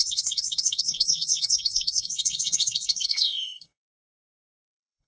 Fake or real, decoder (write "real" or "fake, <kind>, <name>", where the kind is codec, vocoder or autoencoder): fake, codec, SNAC